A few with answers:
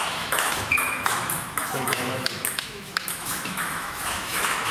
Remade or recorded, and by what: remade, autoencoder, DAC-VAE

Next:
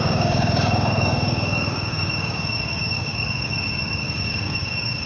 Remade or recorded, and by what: remade, codec, DAC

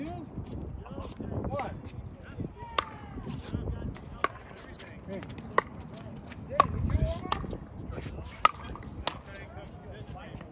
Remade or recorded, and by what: recorded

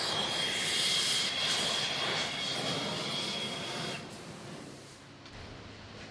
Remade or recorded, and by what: recorded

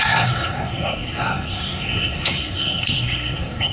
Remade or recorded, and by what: remade, codec, SNAC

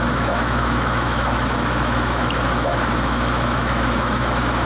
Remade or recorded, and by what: remade, autoencoder, DAC-VAE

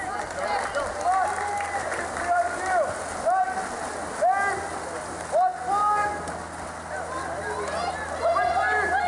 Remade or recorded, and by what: recorded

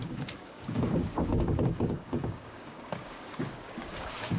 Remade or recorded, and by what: remade, codec, DAC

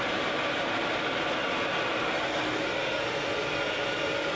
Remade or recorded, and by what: recorded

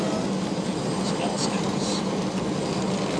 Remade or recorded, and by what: recorded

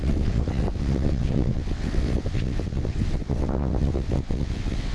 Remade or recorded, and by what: remade, vocoder, WaveNeXt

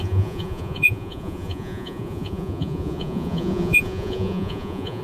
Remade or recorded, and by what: remade, vocoder, Vocos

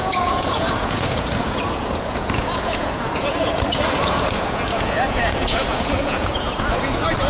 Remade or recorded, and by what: remade, vocoder, Vocos